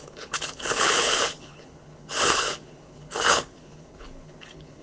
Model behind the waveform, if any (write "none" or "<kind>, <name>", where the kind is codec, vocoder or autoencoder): codec, HILCodec